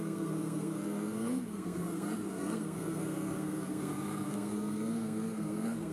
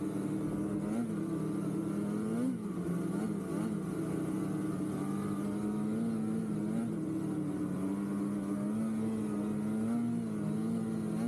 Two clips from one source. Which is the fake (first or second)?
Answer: first